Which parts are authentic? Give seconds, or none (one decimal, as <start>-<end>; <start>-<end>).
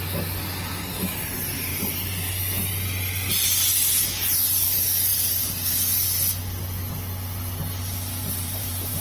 0.0-8.2